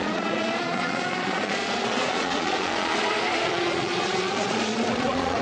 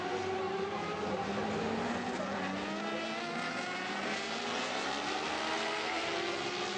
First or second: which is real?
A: second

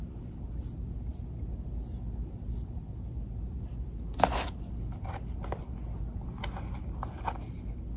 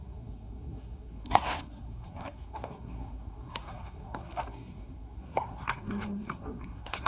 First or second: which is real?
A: first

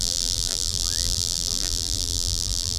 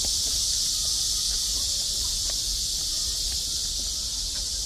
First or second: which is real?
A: second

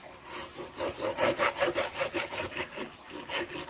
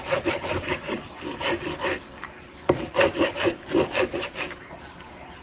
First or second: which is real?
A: first